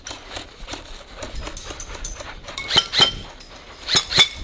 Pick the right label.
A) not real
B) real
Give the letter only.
B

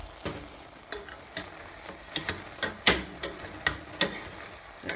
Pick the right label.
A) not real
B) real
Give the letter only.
B